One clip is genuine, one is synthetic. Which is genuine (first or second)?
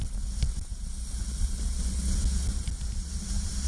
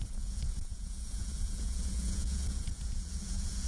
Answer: first